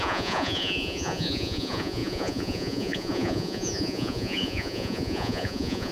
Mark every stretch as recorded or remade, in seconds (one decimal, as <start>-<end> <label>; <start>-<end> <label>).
0.0-5.9 remade